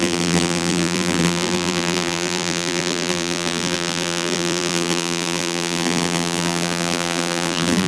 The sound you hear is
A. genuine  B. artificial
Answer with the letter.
B